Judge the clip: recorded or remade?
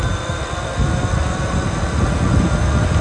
recorded